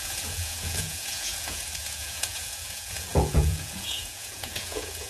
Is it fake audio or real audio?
fake